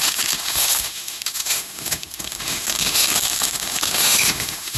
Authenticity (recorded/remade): remade